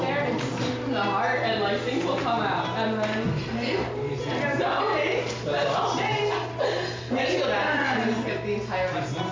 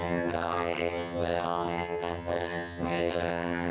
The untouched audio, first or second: first